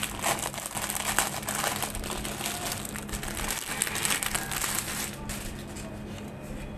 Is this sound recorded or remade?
recorded